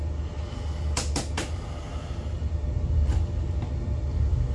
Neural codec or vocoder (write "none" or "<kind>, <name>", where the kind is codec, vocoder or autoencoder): none